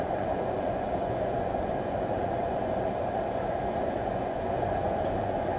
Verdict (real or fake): fake